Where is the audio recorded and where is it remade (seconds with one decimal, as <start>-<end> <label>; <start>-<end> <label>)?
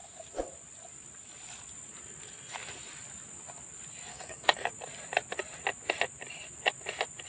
0.0-4.1 recorded; 4.1-4.7 remade; 4.7-7.3 recorded